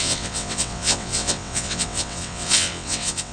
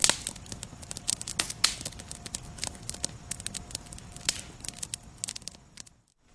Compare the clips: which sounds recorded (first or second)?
second